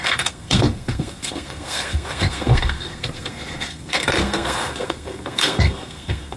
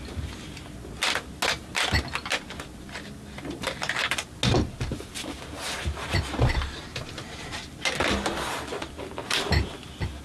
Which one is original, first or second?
second